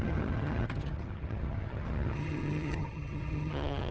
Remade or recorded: remade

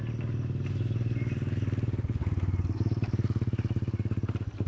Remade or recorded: recorded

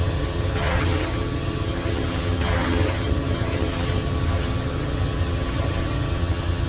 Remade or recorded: remade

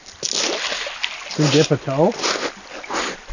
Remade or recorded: recorded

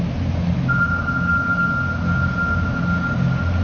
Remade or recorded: recorded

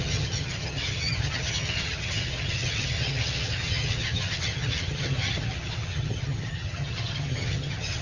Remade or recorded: remade